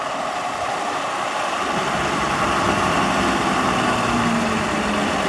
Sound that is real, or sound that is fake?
real